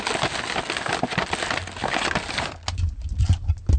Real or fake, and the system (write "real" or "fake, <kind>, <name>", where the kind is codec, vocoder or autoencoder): real